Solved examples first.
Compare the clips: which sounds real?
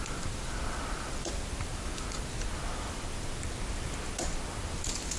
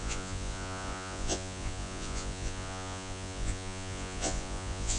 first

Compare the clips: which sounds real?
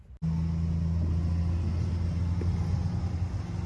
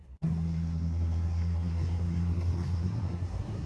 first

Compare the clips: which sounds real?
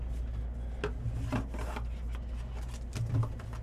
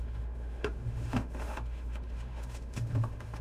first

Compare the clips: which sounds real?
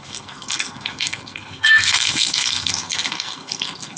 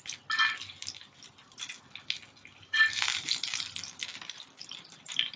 second